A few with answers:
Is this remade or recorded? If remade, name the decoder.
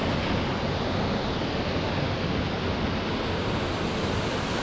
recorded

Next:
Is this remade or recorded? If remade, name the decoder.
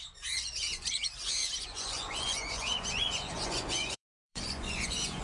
remade, vocoder, Vocos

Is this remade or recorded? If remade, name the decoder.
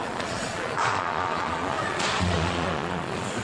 remade, vocoder, Vocos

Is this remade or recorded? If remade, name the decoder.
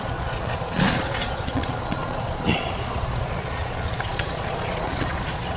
remade, vocoder, Vocos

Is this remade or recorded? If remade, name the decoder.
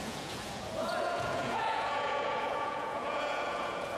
remade, vocoder, Vocos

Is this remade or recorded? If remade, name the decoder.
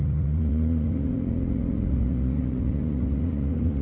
remade, vocoder, Vocos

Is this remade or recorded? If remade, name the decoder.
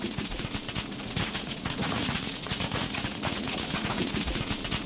remade, vocoder, Vocos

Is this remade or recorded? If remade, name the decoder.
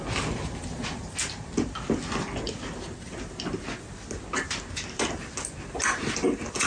recorded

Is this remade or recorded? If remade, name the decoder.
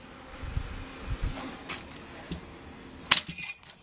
recorded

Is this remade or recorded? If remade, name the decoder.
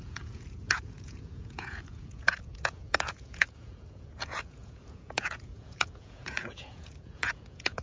remade, vocoder, Vocos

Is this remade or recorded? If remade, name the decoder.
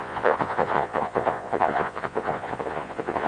remade, vocoder, Vocos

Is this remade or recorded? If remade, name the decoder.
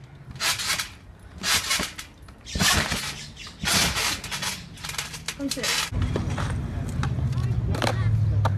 recorded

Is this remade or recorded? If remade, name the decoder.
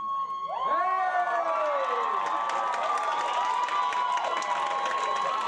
recorded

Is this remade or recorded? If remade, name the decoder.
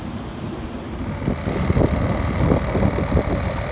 recorded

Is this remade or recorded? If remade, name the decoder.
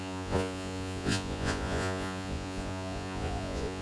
remade, vocoder, Vocos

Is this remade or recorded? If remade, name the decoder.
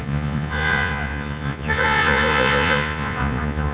remade, vocoder, Vocos